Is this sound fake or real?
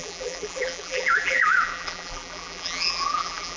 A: fake